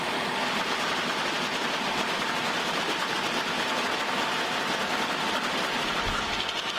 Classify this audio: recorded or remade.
recorded